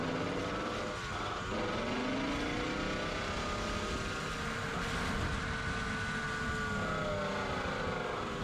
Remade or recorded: recorded